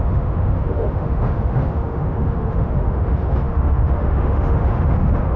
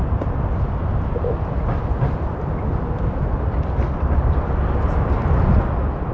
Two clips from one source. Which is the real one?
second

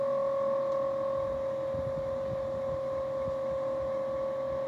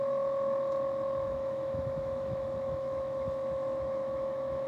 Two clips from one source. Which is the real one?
first